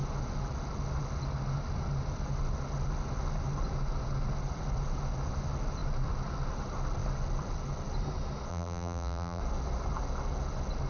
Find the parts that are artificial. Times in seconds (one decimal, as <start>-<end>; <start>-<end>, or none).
8.5-9.4

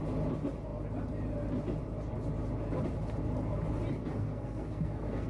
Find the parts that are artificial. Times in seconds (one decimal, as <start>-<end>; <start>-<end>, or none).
4.0-5.3

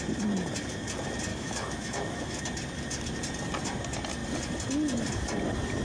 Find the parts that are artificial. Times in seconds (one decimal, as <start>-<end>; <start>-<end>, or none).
1.3-2.4

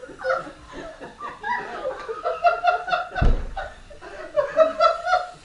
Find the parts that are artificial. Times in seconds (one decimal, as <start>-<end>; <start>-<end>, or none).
0.0-3.2

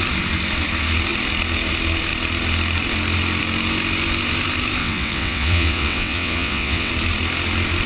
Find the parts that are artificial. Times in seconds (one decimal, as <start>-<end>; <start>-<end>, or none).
4.8-6.9

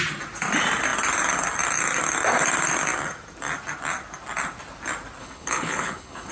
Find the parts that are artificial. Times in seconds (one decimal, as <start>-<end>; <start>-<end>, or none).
5.2-6.3